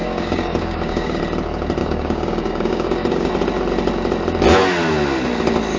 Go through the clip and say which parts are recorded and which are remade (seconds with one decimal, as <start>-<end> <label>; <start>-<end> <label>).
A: 0.0-1.2 remade; 1.2-1.8 recorded; 1.8-3.3 remade; 3.3-5.8 recorded